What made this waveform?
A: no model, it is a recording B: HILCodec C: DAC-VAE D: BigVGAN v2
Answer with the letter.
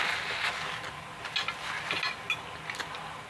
A